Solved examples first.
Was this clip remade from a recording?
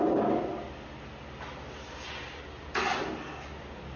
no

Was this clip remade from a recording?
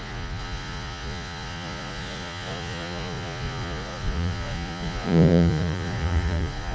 yes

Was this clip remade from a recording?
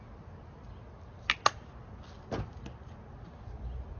no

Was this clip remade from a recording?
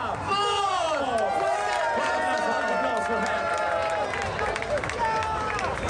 no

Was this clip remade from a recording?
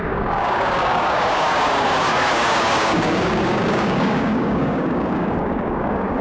yes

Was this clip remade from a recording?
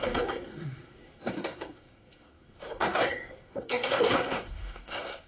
yes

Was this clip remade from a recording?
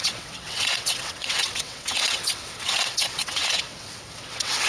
yes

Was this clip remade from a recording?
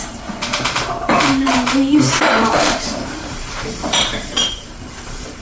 yes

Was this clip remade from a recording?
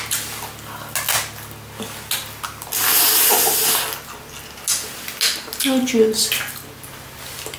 no